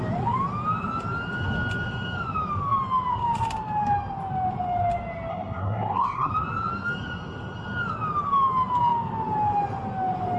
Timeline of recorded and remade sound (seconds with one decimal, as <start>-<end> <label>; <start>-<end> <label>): 0.0-5.3 recorded; 5.3-6.3 remade; 6.3-10.4 recorded